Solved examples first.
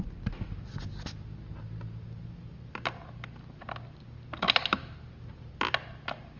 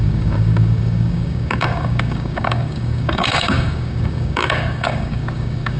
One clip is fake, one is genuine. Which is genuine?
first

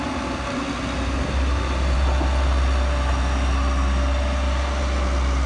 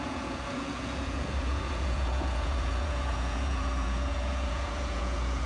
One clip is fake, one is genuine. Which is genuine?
first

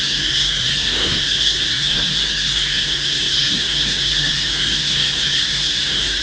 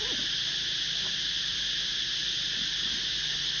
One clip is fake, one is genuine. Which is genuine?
second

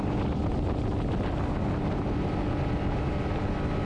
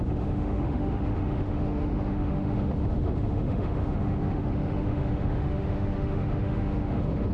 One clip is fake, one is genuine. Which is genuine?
first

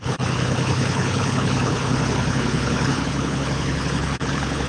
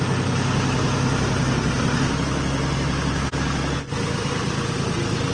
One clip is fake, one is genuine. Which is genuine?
second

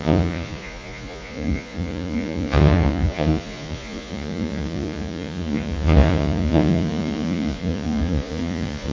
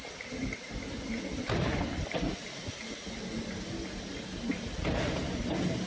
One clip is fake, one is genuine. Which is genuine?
second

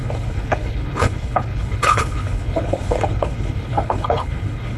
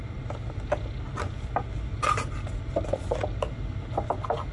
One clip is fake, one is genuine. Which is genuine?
second